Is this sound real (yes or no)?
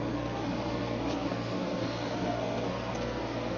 no